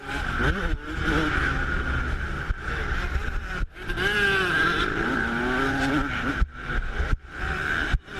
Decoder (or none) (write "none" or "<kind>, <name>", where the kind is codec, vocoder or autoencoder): none